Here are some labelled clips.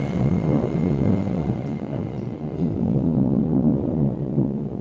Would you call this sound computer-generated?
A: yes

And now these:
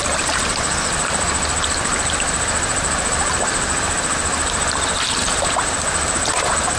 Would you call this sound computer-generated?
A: no